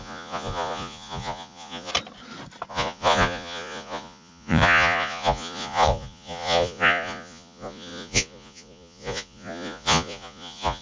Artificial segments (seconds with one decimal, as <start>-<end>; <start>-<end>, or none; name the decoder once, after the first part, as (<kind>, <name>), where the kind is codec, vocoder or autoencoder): 0.0-1.9 (vocoder, Vocos); 2.7-10.8